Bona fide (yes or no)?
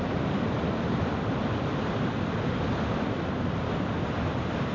no